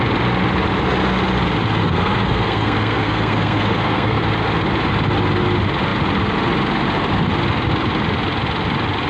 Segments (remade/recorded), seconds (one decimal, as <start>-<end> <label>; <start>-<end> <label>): 0.0-1.8 recorded; 1.8-4.2 remade; 4.2-9.1 recorded